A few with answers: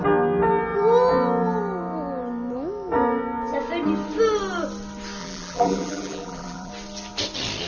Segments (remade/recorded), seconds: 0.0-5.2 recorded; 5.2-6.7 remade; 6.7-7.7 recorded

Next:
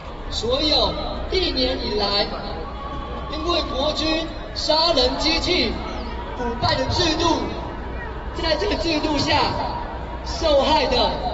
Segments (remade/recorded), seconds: 0.0-0.9 remade; 0.9-3.4 recorded; 3.4-4.3 remade; 4.3-8.4 recorded; 8.4-9.6 remade; 9.6-11.3 recorded